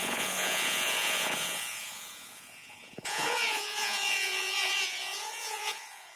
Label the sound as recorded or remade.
remade